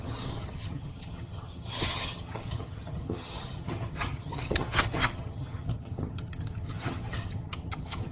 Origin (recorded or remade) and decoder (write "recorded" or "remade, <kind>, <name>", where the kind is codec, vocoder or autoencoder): remade, vocoder, HiFi-GAN